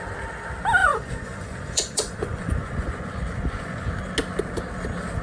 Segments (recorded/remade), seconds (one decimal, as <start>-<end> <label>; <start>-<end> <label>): 0.0-0.8 recorded; 0.8-3.9 remade; 3.9-5.2 recorded